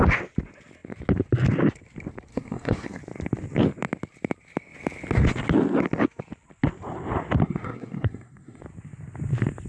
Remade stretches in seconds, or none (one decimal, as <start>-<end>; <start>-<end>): 2.3-3.0; 7.4-8.6